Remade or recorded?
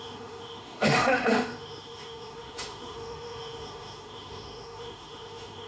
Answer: remade